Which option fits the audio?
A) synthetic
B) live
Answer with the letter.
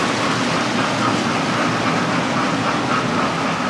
B